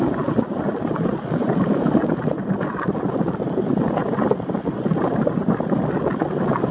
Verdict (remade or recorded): recorded